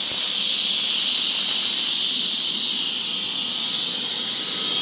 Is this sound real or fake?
real